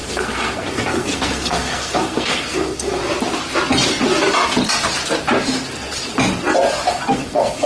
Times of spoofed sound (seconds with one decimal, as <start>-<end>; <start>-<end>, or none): 0.0-3.0; 6.9-7.7